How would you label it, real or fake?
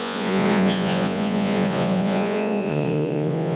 fake